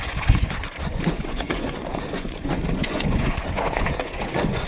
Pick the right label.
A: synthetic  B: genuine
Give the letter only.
A